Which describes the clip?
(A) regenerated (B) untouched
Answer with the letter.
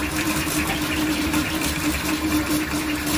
A